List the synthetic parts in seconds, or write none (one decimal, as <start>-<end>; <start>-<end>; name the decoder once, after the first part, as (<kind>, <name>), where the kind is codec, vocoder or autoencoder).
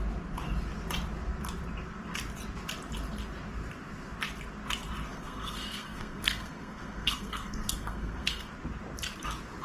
5.1-8.5 (codec, SNAC)